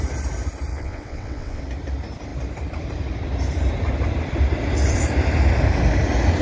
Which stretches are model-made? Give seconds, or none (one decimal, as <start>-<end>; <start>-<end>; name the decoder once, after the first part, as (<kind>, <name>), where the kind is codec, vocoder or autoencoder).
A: 0.7-1.6 (vocoder, WaveNeXt)